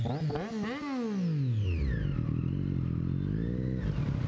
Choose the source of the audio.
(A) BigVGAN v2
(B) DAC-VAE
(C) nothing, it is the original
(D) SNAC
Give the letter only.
C